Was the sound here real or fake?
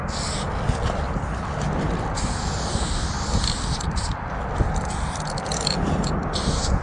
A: real